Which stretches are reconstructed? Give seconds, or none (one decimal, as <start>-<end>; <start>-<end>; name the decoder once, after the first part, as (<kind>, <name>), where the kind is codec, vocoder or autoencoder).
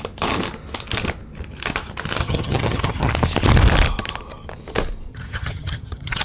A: 2.2-3.1 (vocoder, HiFi-GAN); 5.1-6.2